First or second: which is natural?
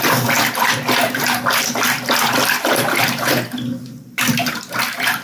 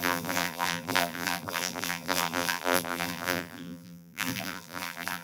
first